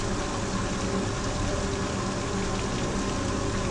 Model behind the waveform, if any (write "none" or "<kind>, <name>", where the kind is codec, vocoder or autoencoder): none